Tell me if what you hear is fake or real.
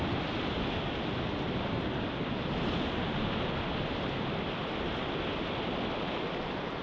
real